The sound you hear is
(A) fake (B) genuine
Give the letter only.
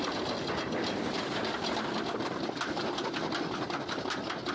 B